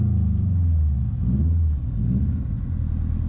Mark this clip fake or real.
real